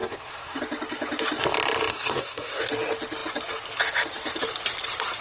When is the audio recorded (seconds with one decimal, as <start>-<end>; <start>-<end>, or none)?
0.6-1.9; 2.6-5.2